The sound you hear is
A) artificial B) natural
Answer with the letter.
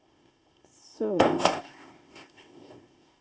A